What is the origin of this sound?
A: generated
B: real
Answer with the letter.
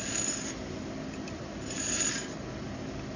B